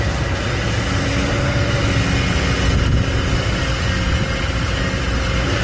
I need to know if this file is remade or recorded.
recorded